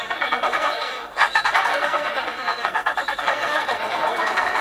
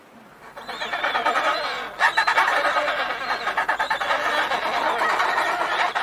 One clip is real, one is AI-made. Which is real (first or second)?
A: second